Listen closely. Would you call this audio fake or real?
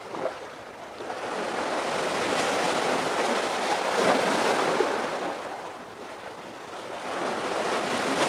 real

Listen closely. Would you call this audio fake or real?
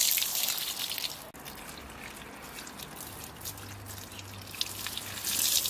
real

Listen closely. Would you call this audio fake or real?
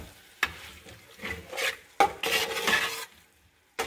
real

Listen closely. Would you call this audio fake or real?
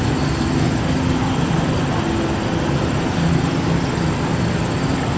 real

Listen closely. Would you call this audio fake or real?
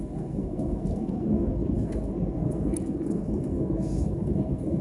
fake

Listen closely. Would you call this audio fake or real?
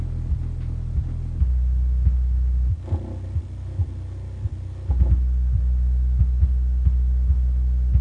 real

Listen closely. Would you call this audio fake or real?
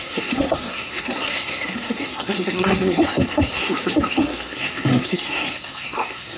fake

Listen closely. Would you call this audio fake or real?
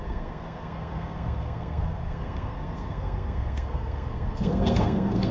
fake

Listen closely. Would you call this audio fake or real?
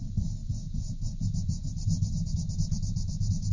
real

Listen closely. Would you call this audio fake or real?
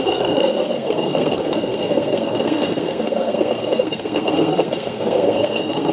fake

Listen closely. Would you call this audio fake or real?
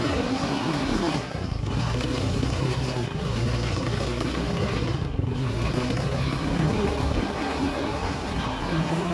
fake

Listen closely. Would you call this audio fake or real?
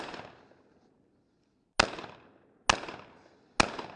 real